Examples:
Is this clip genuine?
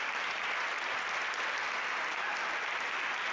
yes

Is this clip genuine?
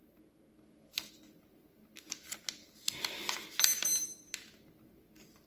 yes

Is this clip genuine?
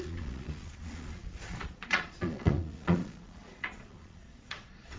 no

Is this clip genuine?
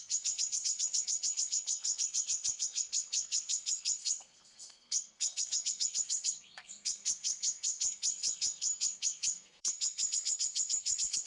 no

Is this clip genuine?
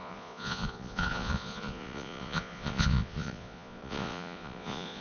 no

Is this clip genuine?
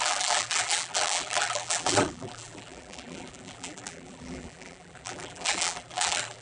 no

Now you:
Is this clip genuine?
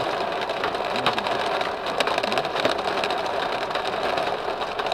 yes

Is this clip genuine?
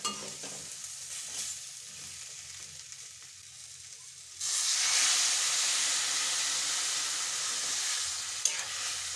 yes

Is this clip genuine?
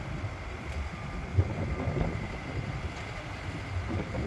yes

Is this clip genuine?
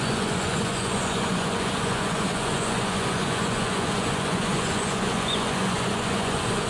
no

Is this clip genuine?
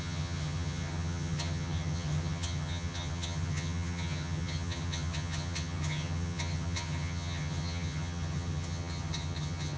no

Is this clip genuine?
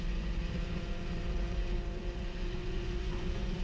no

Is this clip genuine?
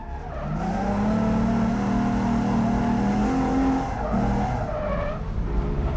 yes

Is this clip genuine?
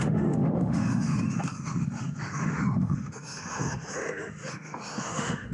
no